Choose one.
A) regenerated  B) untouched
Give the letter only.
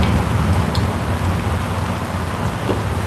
B